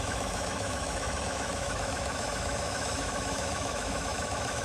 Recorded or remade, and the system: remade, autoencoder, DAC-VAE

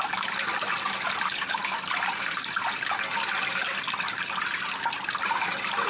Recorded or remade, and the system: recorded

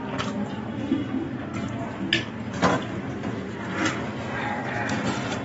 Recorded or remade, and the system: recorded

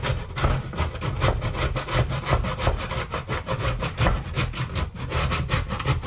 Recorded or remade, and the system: recorded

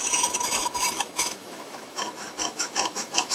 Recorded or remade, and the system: remade, autoencoder, DAC-VAE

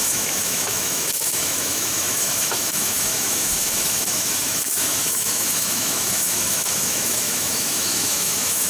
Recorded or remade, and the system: remade, autoencoder, DAC-VAE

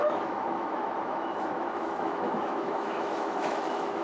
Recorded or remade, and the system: remade, autoencoder, DAC-VAE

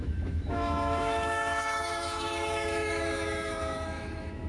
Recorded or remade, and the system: remade, autoencoder, DAC-VAE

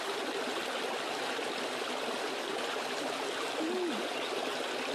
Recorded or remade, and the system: recorded